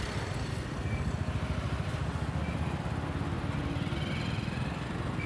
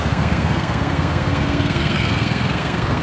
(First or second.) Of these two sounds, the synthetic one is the second